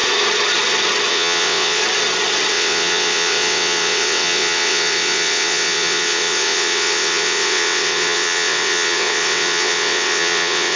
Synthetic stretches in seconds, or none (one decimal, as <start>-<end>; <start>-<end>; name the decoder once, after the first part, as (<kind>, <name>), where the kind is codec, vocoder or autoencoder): 1.1-1.8 (vocoder, WaveNeXt); 2.5-10.8